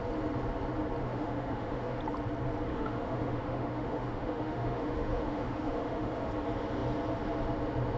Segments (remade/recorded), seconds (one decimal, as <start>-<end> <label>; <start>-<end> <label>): 0.0-1.0 recorded; 1.0-2.0 remade; 2.0-2.7 recorded; 2.7-6.3 remade; 6.3-8.0 recorded